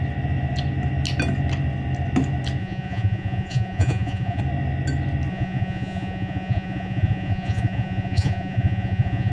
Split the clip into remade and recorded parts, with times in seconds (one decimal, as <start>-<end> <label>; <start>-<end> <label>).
0.0-2.6 recorded; 2.6-4.4 remade; 4.4-5.3 recorded; 5.3-9.3 remade

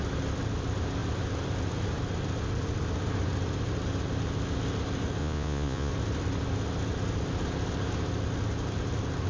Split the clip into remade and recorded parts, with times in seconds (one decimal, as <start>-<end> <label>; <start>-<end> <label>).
0.0-5.2 recorded; 5.2-5.9 remade; 5.9-9.3 recorded

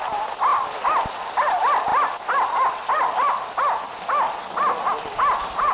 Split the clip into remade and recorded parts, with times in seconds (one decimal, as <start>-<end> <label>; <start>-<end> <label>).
0.0-5.7 recorded

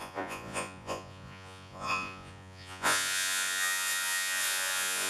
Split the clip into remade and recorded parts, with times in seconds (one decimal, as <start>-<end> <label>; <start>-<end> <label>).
0.0-5.1 remade